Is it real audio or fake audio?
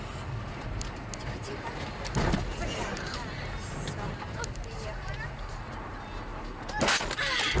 real